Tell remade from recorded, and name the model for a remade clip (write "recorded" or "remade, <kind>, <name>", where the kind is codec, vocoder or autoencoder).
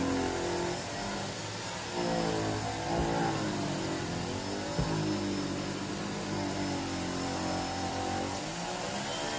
recorded